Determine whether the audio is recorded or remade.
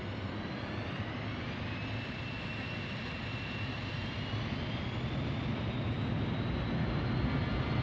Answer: recorded